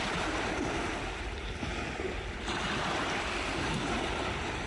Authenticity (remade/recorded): recorded